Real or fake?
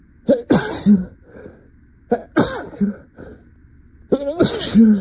real